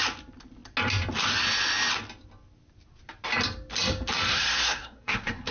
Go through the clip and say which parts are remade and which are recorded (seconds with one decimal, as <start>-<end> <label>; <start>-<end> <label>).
0.0-4.3 recorded; 4.3-5.5 remade